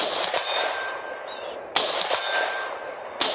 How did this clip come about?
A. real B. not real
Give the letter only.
A